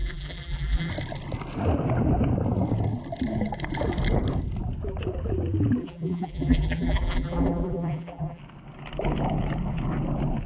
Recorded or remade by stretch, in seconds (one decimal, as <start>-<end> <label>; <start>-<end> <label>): 0.0-0.9 remade; 0.9-5.8 recorded; 5.8-8.4 remade; 8.4-10.5 recorded

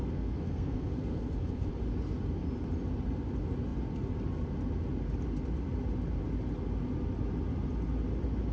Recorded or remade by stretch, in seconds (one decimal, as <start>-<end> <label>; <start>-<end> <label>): 0.0-1.7 remade; 1.7-8.5 recorded